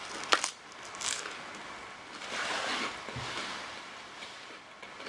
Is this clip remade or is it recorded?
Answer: recorded